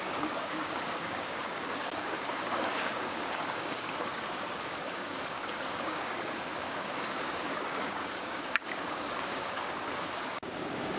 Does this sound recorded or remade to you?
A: remade